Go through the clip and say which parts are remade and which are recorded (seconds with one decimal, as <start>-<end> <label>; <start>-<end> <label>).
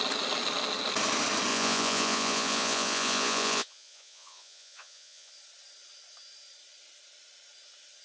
0.0-1.5 recorded; 1.5-5.3 remade; 5.3-8.0 recorded